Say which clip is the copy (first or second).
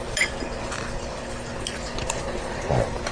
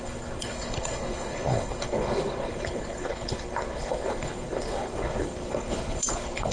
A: second